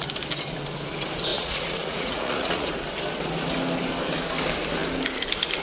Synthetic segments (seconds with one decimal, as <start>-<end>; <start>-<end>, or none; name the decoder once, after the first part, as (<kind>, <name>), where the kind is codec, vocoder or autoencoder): 1.3-2.7 (vocoder, Vocos)